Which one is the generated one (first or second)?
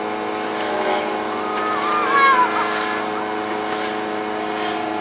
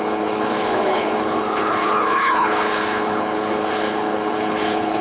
second